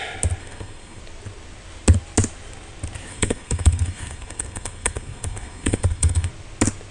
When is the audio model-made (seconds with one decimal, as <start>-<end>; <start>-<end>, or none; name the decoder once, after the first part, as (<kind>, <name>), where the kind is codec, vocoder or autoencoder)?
0.4-1.0 (codec, SNAC); 3.1-6.3